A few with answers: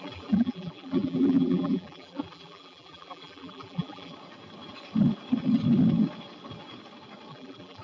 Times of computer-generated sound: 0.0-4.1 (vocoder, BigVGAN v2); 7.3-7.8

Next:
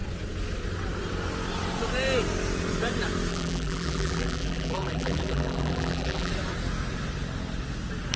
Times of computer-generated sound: 3.3-6.3 (vocoder, BigVGAN v2)